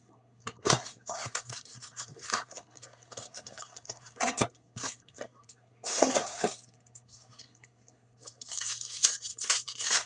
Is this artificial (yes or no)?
yes